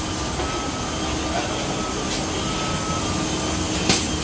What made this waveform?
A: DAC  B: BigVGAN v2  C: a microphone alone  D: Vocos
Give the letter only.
C